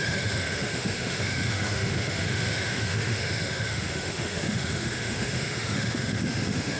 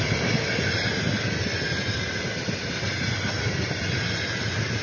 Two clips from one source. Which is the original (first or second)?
second